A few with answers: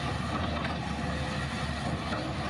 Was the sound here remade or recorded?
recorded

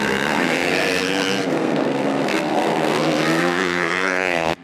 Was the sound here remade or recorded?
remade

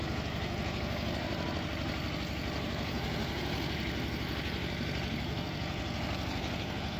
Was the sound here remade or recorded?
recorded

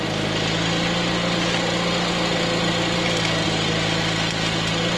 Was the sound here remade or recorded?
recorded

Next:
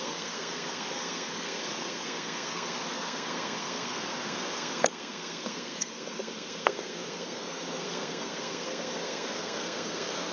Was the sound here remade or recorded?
remade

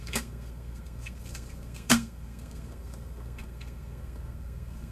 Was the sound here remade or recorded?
remade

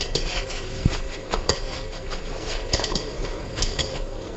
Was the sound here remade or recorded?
remade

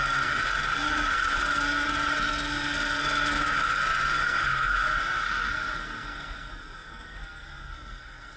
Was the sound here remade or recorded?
remade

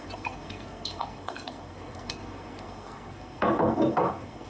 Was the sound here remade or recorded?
remade